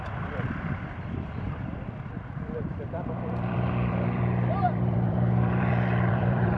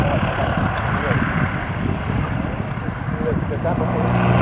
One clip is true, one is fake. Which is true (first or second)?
second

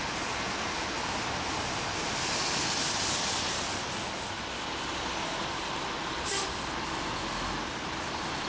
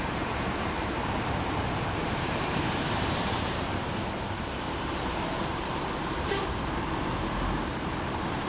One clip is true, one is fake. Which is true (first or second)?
first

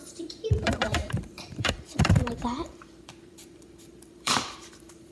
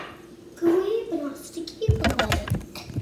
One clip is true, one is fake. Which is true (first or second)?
second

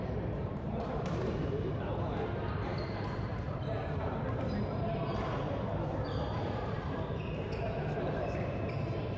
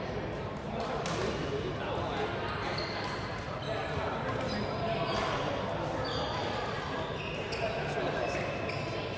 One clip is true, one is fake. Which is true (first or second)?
second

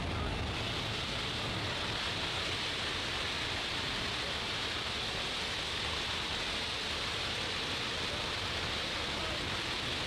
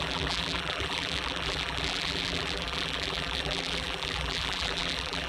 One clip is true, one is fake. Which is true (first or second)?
first